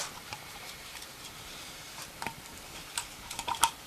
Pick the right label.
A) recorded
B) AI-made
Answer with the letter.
B